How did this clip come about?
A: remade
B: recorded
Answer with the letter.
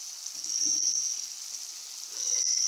B